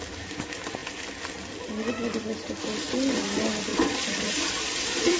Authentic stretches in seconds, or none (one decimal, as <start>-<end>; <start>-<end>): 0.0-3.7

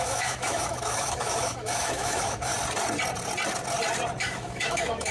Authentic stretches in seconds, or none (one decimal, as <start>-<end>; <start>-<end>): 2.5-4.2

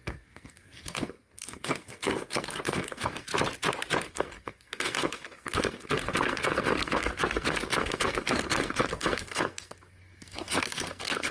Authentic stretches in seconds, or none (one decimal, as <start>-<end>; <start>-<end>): 3.3-4.0